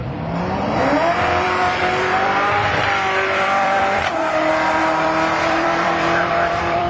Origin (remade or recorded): remade